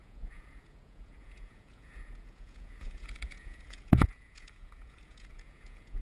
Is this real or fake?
fake